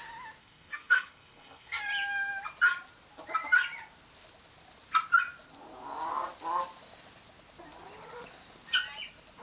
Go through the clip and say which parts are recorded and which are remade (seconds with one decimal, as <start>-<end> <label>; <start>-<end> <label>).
0.0-0.4 recorded; 0.4-1.8 remade; 1.8-9.4 recorded